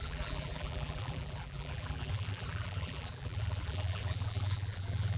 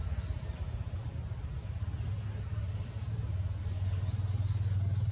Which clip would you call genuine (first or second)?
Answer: second